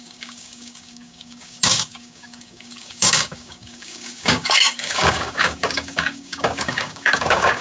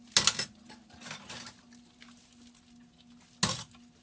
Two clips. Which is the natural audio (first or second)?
second